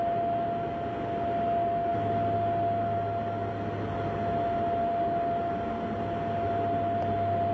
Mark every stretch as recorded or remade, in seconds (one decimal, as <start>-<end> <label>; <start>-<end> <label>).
0.0-7.5 recorded